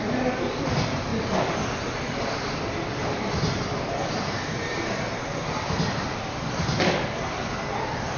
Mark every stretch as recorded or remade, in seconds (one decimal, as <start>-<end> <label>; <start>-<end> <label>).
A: 0.0-1.1 remade; 1.1-2.3 recorded; 2.3-8.2 remade